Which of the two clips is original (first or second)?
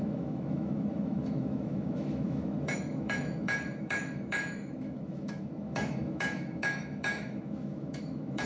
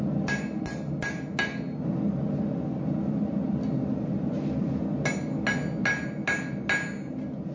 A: second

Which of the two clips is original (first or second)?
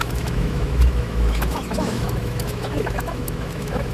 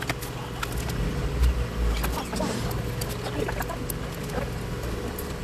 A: second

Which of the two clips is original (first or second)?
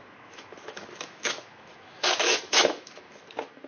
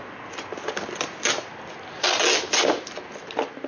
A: second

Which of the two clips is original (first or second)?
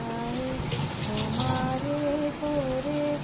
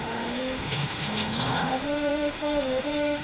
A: first